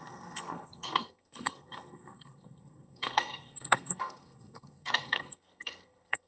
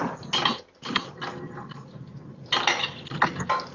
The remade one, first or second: first